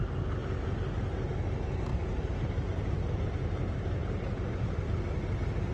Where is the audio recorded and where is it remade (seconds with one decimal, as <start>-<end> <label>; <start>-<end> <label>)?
0.0-0.4 recorded; 0.4-1.3 remade; 1.3-1.9 recorded; 1.9-3.2 remade; 3.2-5.7 recorded